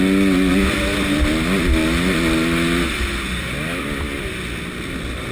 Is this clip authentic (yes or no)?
yes